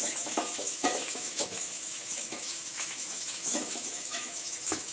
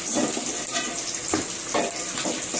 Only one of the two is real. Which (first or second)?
second